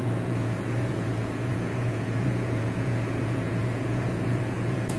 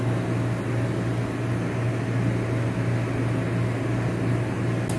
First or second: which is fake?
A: first